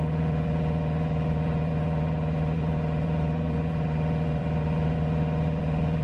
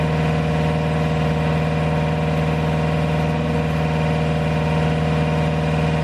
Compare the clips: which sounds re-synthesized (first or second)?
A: first